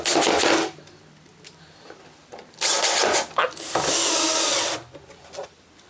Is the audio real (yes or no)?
yes